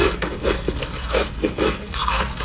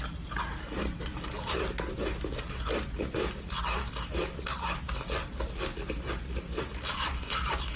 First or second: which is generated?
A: first